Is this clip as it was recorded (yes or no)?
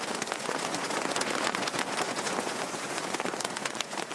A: no